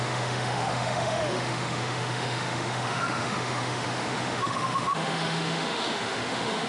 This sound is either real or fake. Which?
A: fake